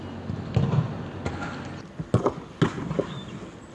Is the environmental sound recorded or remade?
recorded